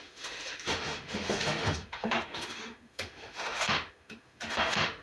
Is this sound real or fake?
fake